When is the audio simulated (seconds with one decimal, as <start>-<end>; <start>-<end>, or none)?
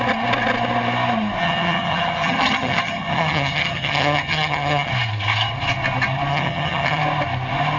1.4-4.9; 6.3-7.0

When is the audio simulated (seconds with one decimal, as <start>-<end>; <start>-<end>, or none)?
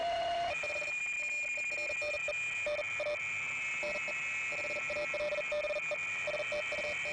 0.0-1.0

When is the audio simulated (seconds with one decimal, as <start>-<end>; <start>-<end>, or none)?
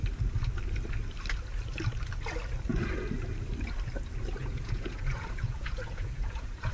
4.4-6.7